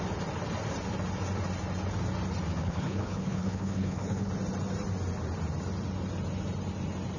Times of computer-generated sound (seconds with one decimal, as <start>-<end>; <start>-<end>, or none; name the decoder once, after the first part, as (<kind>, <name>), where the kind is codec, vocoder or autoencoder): 2.6-4.3 (codec, HILCodec)